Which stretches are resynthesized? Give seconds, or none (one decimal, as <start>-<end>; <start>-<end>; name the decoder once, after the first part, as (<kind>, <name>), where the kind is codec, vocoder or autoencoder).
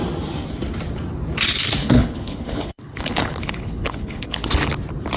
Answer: 1.8-4.5 (codec, HILCodec)